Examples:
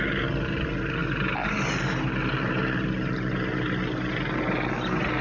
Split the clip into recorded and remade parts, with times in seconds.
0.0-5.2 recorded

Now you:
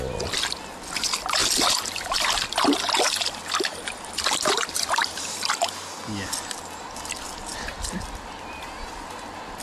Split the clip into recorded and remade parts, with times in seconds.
0.0-1.4 recorded; 1.4-5.5 remade; 5.5-7.5 recorded; 7.5-8.5 remade; 8.5-9.6 recorded

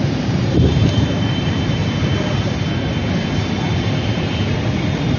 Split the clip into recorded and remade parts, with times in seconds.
0.0-1.8 remade; 1.8-5.2 recorded

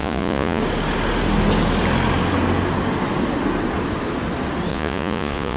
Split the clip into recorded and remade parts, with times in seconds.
0.0-0.6 remade; 0.6-4.7 recorded; 4.7-5.6 remade

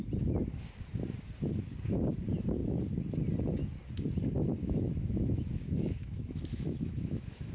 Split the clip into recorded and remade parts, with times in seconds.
0.0-4.6 recorded; 4.6-7.5 remade

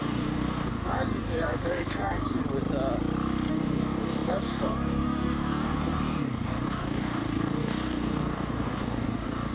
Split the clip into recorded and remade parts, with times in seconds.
0.0-2.4 remade; 2.4-3.5 recorded; 3.5-9.5 remade

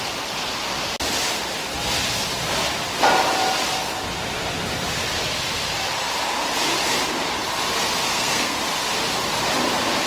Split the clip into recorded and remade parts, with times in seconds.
0.0-8.1 recorded; 8.1-8.6 remade; 8.6-10.1 recorded